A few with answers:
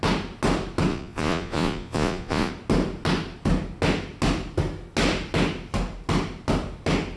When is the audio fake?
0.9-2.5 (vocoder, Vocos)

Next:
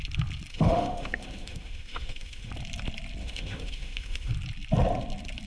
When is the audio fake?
0.5-2.5 (autoencoder, DAC-VAE); 3.2-4.3